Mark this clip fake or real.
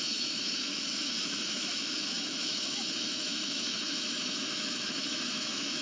fake